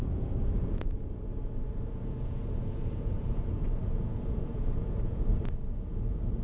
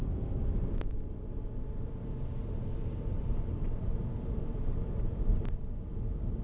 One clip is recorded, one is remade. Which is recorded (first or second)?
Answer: second